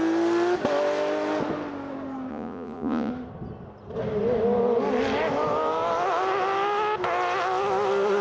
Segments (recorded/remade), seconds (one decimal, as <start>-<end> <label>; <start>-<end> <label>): 0.0-2.3 recorded; 2.3-3.1 remade; 3.1-8.2 recorded